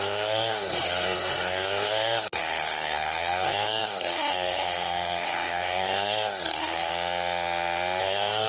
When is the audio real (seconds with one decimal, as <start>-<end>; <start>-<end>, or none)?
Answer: 6.9-8.0